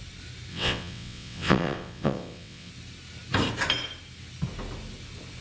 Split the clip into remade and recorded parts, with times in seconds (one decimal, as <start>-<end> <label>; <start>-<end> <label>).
0.0-0.5 recorded; 0.5-2.7 remade; 2.7-5.4 recorded